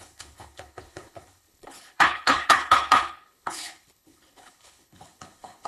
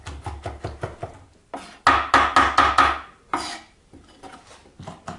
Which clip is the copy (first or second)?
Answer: first